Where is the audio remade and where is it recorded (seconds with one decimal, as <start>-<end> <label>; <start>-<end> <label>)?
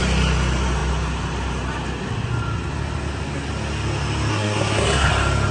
0.0-4.3 recorded; 4.3-5.1 remade; 5.1-5.5 recorded